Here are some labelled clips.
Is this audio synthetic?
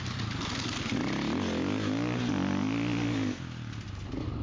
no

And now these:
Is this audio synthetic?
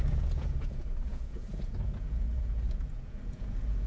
yes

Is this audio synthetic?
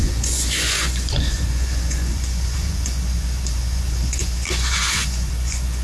yes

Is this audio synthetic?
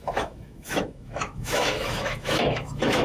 yes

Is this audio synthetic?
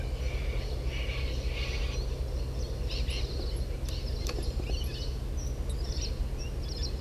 no